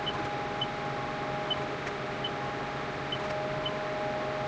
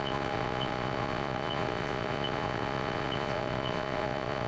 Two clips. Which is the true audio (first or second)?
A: first